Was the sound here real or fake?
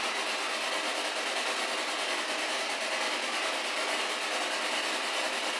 real